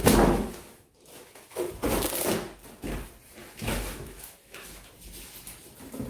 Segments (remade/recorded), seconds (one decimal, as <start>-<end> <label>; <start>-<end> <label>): 0.0-1.7 remade; 1.7-3.4 recorded; 3.4-4.9 remade; 4.9-6.1 recorded